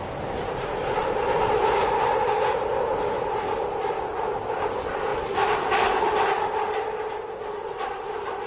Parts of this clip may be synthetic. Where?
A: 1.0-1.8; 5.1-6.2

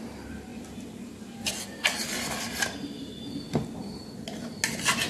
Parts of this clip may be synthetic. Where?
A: none

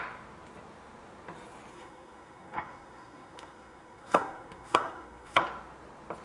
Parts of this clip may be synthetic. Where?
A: 1.7-5.4

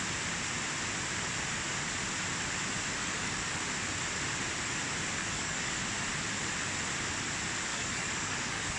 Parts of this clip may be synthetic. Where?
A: 3.0-3.6; 5.2-5.8; 7.7-8.8

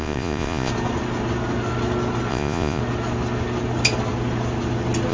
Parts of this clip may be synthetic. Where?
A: 0.0-0.7; 2.3-2.8